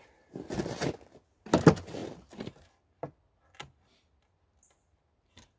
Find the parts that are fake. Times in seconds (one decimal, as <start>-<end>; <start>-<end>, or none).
none